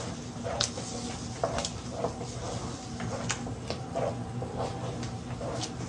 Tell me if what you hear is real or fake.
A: real